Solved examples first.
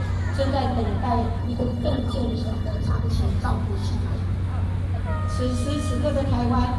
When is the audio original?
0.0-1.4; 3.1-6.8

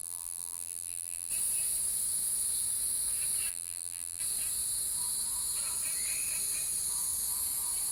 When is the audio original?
1.3-3.5; 4.2-7.9

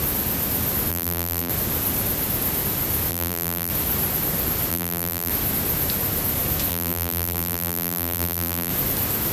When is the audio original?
0.0-0.9; 1.5-3.1; 3.7-4.7; 5.3-6.7; 8.7-9.3

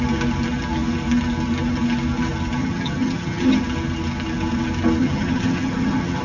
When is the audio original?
0.0-2.6; 3.6-5.0